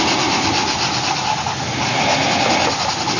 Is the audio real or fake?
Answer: real